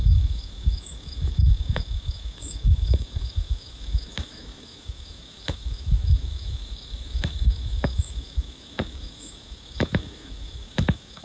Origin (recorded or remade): remade